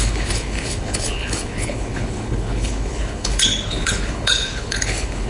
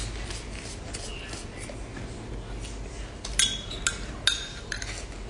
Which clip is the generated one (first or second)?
first